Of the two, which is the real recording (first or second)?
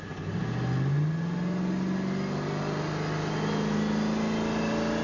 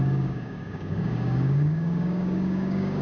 first